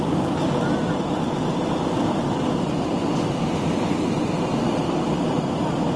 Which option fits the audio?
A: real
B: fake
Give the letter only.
A